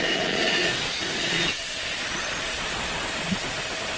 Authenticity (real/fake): fake